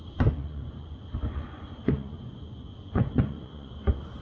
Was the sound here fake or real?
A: fake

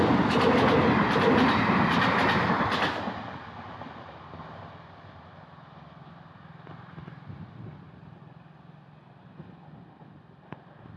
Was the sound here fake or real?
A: real